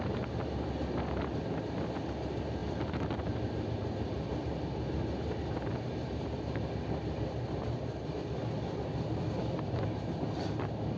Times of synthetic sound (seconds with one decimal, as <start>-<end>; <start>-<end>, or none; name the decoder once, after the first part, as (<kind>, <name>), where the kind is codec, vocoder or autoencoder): none